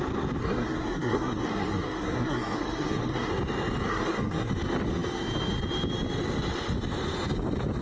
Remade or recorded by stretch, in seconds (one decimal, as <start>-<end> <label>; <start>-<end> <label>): 0.0-0.4 recorded; 0.4-3.3 remade; 3.3-3.9 recorded; 3.9-4.5 remade; 4.5-7.8 recorded